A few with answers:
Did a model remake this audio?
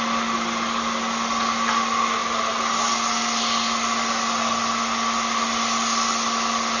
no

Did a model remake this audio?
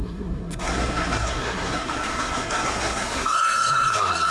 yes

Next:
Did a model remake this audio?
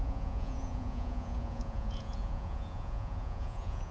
yes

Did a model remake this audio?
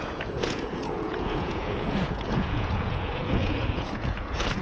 yes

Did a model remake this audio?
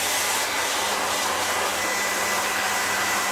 no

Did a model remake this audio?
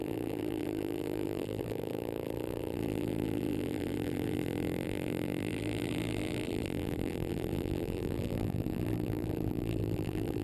yes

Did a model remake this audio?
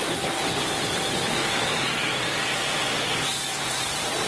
no